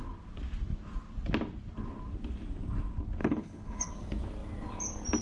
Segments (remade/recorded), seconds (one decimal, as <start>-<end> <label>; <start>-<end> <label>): 0.0-3.2 recorded; 3.2-3.9 remade; 3.9-5.2 recorded